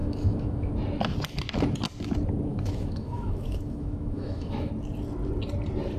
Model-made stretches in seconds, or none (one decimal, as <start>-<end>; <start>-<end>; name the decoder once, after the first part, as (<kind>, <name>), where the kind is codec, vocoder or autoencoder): 0.0-0.7 (autoencoder, DAC-VAE); 2.5-4.7